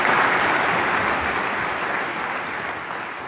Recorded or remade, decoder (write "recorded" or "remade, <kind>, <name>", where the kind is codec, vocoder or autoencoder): recorded